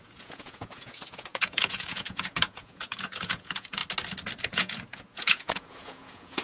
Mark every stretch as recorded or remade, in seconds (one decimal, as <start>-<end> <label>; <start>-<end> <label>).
0.0-3.8 remade; 3.8-4.5 recorded; 4.5-6.4 remade